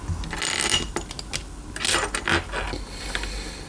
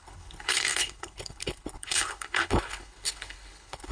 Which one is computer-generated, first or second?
second